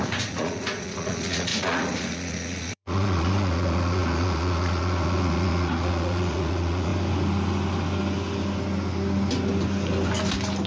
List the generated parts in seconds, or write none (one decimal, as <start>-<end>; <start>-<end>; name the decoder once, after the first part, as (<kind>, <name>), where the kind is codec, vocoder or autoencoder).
0.0-6.9 (vocoder, Vocos)